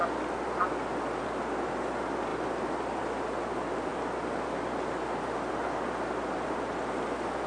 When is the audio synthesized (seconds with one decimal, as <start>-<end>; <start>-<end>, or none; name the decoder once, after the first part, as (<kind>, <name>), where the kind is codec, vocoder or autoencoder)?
none